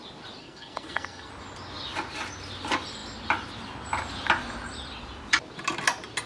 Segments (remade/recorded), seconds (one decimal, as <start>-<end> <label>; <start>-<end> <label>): 0.0-0.4 recorded; 0.4-1.3 remade; 1.3-6.3 recorded